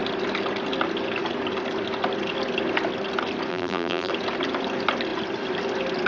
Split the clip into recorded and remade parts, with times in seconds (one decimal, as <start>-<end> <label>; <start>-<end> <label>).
0.0-3.5 recorded; 3.5-4.1 remade; 4.1-6.1 recorded